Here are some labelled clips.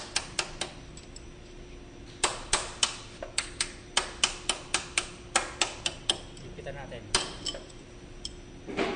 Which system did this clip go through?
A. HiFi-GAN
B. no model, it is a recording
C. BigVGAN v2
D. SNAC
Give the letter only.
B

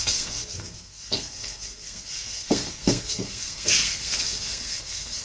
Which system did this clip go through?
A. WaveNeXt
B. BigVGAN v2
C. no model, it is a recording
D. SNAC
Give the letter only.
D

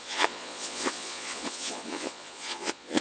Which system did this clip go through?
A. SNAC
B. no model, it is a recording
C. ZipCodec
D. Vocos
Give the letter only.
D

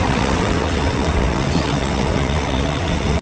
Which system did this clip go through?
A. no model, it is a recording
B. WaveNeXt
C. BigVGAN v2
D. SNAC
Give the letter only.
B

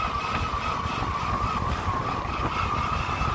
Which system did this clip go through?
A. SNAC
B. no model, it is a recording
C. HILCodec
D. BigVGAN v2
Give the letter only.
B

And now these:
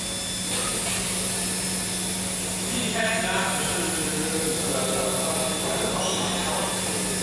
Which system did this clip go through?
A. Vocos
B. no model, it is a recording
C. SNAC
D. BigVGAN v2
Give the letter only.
B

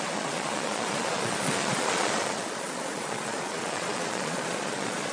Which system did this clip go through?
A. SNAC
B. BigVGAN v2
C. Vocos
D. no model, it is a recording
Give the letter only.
C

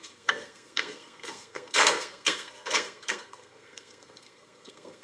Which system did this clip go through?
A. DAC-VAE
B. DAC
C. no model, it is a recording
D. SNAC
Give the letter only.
D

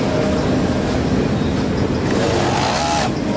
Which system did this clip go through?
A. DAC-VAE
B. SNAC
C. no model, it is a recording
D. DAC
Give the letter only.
C